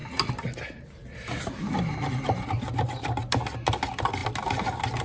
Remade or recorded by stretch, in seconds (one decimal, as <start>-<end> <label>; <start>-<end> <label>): 0.0-5.0 recorded